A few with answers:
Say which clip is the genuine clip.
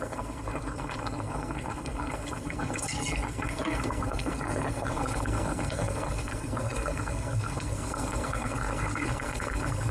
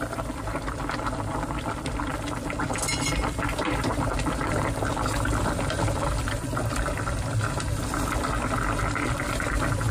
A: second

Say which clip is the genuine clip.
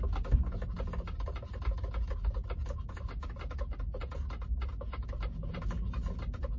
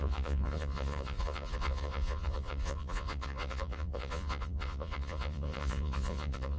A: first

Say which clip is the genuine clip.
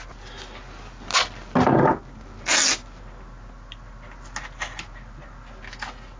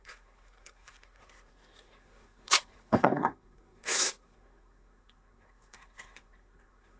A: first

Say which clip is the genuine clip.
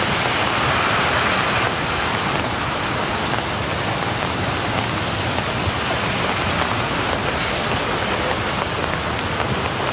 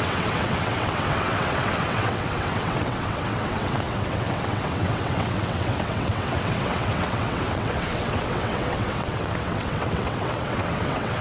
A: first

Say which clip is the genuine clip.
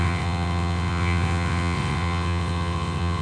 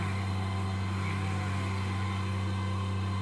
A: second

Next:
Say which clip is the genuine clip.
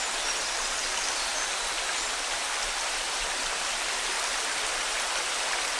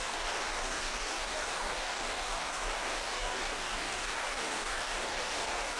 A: first